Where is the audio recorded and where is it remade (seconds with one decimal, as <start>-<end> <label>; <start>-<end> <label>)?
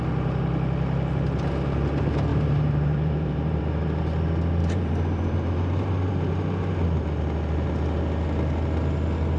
0.0-2.3 recorded; 2.3-3.6 remade; 3.6-4.6 recorded; 4.6-6.3 remade; 6.3-9.4 recorded